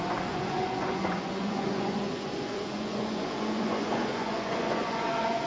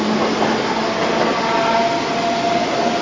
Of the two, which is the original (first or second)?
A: second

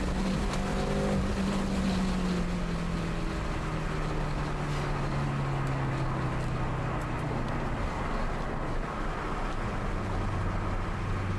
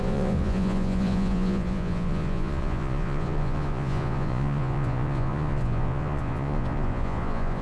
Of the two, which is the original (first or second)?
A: first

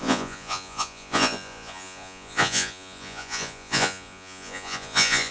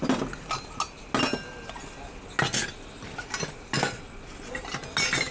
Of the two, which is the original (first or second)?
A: second